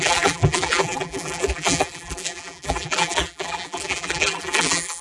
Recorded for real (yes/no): no